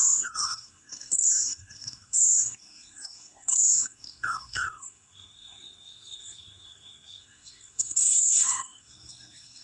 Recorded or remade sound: remade